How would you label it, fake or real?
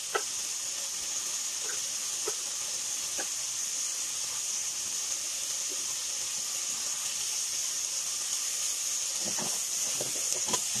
real